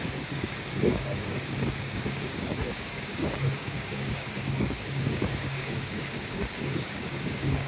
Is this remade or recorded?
remade